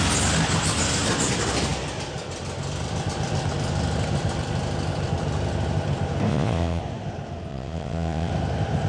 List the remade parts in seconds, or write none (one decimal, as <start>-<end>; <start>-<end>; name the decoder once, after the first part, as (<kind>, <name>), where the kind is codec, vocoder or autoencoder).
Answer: 6.3-6.8 (vocoder, Vocos); 7.5-8.3